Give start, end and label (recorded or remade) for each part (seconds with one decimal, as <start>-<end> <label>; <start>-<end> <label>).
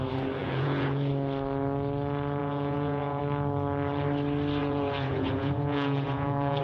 0.0-0.4 recorded; 0.4-1.1 remade; 1.1-2.4 recorded; 2.4-3.2 remade; 3.2-4.6 recorded; 4.6-6.6 remade